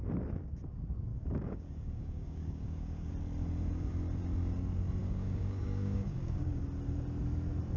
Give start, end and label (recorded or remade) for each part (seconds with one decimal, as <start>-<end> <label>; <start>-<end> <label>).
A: 0.0-1.1 recorded; 1.1-3.1 remade; 3.1-5.0 recorded; 5.0-6.6 remade; 6.6-7.8 recorded